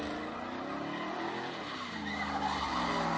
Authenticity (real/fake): real